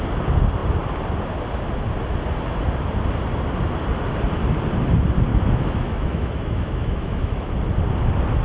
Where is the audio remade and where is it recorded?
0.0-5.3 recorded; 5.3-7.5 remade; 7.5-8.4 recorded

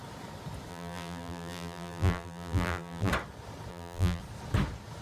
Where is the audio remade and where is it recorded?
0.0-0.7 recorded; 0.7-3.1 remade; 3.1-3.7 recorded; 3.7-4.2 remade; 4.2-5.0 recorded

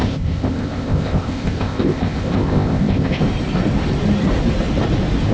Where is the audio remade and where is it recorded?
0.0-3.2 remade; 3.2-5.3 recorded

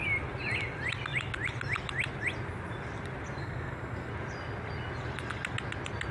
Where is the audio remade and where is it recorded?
0.0-3.4 recorded; 3.4-4.1 remade; 4.1-6.1 recorded

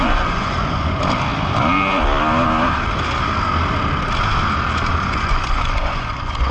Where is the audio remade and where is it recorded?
0.0-1.0 remade; 1.0-4.9 recorded; 4.9-6.5 remade

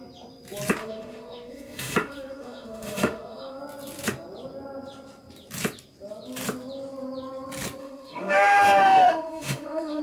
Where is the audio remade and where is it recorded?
0.0-0.8 recorded; 0.8-3.6 remade; 3.6-7.8 recorded; 7.8-10.0 remade

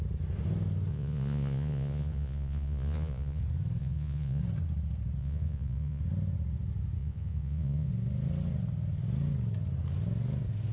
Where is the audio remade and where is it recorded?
0.0-0.9 recorded; 0.9-3.4 remade; 3.4-3.8 recorded; 3.8-4.4 remade; 4.4-5.2 recorded; 5.2-6.0 remade; 6.0-7.0 recorded; 7.0-7.9 remade; 7.9-10.7 recorded